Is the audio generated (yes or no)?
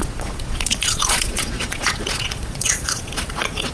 yes